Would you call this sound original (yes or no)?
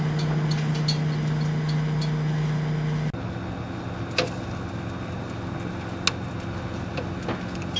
yes